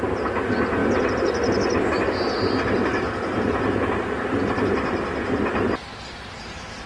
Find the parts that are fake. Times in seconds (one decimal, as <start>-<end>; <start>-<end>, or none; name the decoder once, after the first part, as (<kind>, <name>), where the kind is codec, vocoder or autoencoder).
none

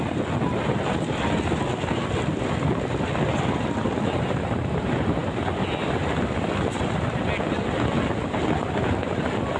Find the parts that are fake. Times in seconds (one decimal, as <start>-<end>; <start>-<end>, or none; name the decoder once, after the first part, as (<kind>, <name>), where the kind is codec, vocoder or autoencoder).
none

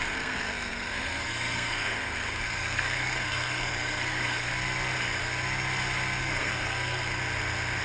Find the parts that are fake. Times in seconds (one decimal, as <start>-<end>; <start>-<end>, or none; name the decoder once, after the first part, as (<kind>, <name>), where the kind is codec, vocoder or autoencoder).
0.0-4.5 (codec, SNAC); 6.2-7.2

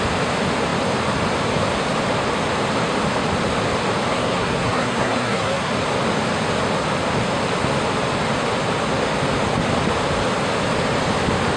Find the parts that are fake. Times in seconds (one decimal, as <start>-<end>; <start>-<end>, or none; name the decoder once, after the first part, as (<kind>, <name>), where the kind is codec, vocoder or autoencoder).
4.1-5.7 (codec, SNAC)

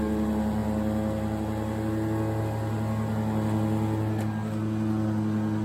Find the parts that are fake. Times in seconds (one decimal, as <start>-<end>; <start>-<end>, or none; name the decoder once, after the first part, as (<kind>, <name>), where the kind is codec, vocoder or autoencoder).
none

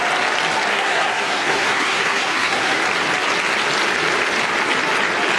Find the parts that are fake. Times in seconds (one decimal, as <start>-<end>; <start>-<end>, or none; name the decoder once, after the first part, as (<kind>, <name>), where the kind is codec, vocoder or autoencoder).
0.7-2.8 (codec, SNAC)